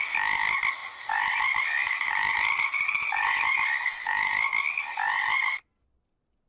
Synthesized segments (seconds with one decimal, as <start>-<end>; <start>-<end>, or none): none